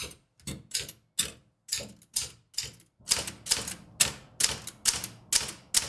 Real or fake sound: real